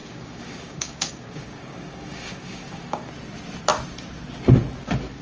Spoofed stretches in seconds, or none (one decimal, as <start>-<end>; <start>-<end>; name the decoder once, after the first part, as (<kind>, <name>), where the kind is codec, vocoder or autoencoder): 0.0-3.1 (codec, DAC)